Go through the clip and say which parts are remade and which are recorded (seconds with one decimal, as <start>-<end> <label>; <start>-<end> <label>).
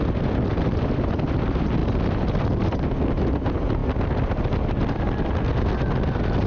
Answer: 0.0-6.5 recorded